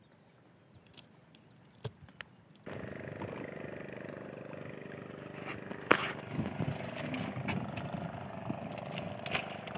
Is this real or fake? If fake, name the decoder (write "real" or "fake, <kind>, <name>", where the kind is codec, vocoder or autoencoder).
real